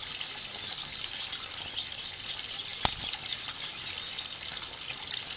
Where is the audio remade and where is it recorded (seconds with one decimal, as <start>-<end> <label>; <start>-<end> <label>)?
0.0-5.4 recorded